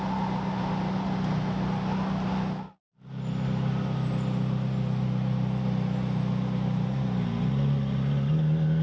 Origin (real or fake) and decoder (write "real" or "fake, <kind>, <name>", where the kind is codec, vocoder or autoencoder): real